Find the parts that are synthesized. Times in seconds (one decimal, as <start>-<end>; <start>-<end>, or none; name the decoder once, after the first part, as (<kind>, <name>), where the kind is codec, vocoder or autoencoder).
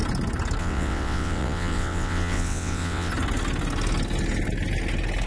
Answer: 0.6-3.1 (vocoder, WaveNeXt)